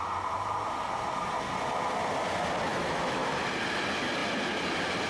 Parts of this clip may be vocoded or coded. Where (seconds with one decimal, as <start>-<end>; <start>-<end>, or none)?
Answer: 2.7-3.3